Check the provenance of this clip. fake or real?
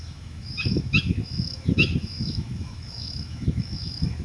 fake